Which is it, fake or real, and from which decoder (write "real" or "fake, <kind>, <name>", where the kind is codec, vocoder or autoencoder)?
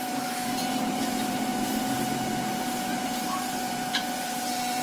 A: fake, vocoder, BigVGAN v2